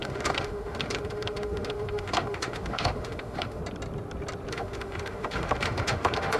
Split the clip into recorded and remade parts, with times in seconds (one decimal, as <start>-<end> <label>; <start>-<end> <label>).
0.0-3.6 remade; 3.6-4.5 recorded; 4.5-6.4 remade